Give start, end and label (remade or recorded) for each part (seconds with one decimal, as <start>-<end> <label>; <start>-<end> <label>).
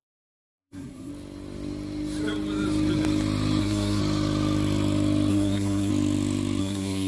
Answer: 0.0-1.1 remade; 1.1-3.6 recorded; 3.6-4.0 remade; 4.0-5.3 recorded; 5.3-5.9 remade; 5.9-6.6 recorded; 6.6-7.1 remade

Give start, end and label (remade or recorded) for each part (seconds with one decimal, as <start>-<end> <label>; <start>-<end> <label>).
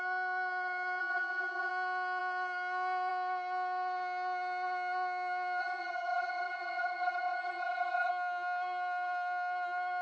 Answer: 0.0-1.0 recorded; 1.0-1.7 remade; 1.7-5.6 recorded; 5.6-8.1 remade; 8.1-10.0 recorded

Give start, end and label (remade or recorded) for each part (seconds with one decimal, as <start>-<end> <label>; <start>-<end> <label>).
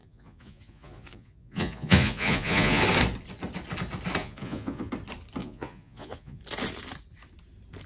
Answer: 0.0-2.8 remade; 2.8-4.2 recorded; 4.2-4.9 remade; 4.9-5.4 recorded; 5.4-6.4 remade; 6.4-7.9 recorded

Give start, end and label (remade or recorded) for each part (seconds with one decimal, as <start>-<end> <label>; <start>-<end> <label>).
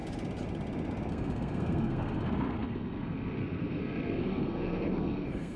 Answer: 0.0-1.1 recorded; 1.1-5.6 remade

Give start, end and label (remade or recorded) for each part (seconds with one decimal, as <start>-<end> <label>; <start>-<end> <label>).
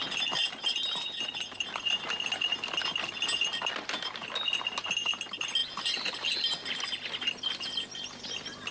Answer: 0.0-8.7 recorded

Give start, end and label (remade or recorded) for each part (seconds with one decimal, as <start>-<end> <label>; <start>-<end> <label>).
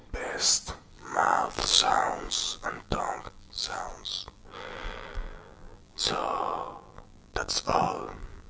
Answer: 0.0-0.9 recorded; 0.9-8.5 remade